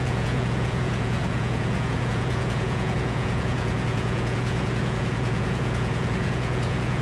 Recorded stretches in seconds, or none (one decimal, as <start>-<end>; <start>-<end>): none